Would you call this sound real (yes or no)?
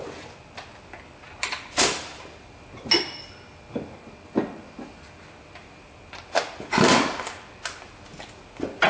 yes